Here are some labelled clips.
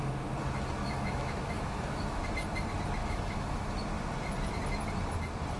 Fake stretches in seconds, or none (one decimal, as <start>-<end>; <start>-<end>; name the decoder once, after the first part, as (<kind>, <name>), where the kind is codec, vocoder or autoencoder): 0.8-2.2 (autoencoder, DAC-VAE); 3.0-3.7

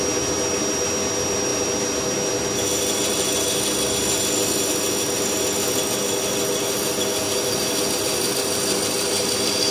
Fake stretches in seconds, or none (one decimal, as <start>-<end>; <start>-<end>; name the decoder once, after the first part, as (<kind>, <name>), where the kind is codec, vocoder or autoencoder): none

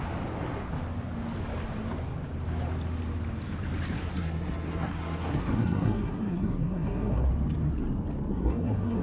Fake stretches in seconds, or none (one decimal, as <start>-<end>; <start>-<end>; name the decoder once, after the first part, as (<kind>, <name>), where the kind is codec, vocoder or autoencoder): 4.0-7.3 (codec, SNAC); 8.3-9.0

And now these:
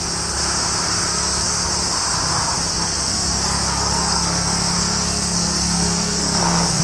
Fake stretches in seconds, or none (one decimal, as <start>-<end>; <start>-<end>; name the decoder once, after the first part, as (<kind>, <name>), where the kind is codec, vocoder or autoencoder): 1.1-1.7 (codec, SNAC); 2.8-6.8

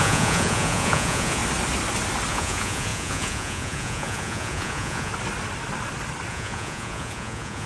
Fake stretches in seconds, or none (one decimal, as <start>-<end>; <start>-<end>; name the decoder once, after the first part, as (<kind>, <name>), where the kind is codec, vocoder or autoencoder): 0.0-1.4 (vocoder, Vocos); 2.3-5.1; 6.3-7.7

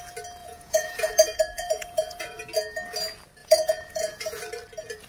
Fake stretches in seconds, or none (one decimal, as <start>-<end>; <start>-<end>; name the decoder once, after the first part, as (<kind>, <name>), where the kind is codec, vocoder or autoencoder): 0.4-2.4 (vocoder, Vocos); 3.4-4.4

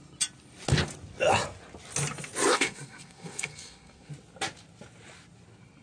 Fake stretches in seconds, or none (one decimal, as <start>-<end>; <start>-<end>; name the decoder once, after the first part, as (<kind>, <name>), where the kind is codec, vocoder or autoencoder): 2.5-4.1 (codec, SNAC)